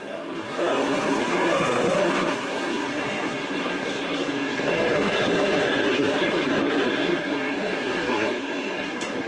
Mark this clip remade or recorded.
remade